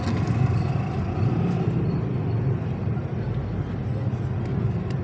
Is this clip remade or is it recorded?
recorded